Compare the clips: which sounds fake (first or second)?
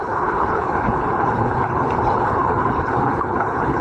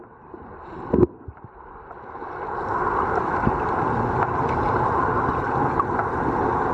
first